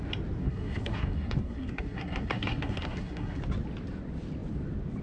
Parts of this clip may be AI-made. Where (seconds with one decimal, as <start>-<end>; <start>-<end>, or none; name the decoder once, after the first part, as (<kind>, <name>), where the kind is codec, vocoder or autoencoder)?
0.4-3.4 (codec, SNAC)